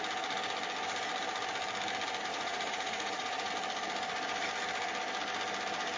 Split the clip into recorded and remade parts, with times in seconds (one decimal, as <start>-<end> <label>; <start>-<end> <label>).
0.0-2.3 recorded; 2.3-3.5 remade; 3.5-6.0 recorded